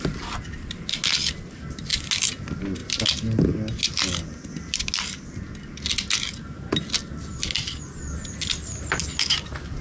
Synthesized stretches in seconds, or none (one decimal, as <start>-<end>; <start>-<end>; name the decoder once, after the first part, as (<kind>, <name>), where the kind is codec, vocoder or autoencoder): none